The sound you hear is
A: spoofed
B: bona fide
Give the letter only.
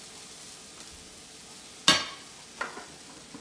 B